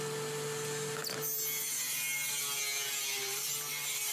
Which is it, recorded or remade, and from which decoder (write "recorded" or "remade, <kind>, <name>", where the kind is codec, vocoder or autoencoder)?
recorded